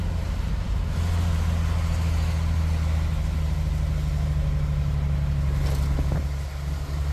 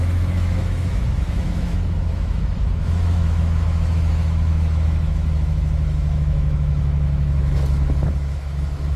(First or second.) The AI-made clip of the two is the second